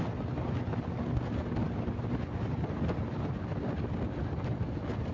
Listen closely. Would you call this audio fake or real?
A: real